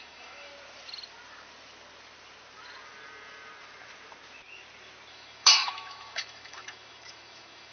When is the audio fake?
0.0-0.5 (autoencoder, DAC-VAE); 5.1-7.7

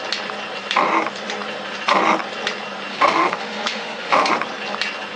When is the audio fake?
2.9-4.3 (autoencoder, DAC-VAE)

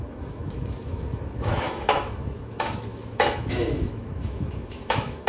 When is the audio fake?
0.0-5.3 (autoencoder, DAC-VAE)

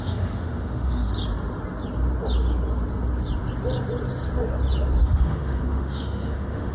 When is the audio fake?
0.0-1.1 (autoencoder, DAC-VAE); 5.1-6.7

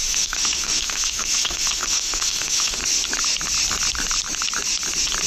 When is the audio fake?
0.0-2.8 (autoencoder, DAC-VAE)

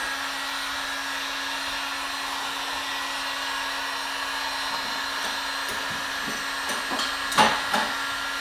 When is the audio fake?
none

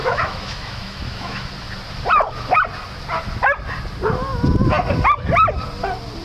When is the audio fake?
0.0-1.5 (autoencoder, DAC-VAE)